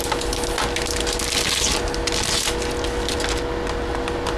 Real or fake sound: real